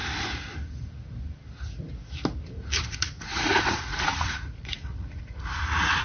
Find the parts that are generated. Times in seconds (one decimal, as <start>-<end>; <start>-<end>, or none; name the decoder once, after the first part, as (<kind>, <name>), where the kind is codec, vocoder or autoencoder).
2.9-6.0 (vocoder, Vocos)